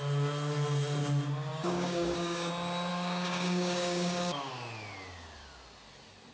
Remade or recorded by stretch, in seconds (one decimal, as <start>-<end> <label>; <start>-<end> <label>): 0.0-1.5 recorded; 1.5-2.5 remade; 2.5-2.9 recorded; 2.9-4.5 remade; 4.5-6.3 recorded